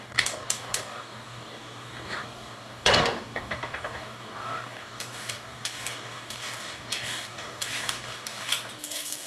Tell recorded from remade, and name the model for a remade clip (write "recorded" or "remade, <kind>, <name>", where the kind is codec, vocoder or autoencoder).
remade, codec, DAC